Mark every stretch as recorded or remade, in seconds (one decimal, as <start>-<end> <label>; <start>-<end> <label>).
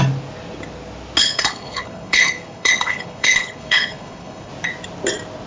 0.0-1.2 recorded; 1.2-4.5 remade; 4.5-5.5 recorded